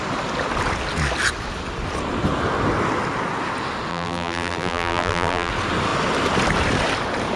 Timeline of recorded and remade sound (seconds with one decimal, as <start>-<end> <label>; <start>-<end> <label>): 0.0-3.9 recorded; 3.9-5.5 remade; 5.5-7.4 recorded